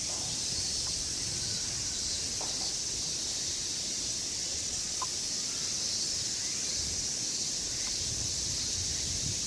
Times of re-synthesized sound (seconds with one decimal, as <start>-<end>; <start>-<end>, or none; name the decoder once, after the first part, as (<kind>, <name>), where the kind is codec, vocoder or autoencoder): 4.4-5.0 (vocoder, Vocos)